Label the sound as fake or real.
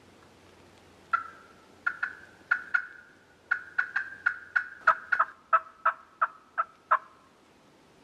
real